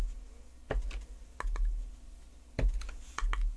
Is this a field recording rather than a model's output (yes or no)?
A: yes